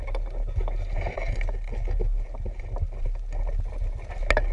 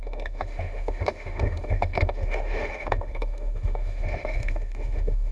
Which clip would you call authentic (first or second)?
first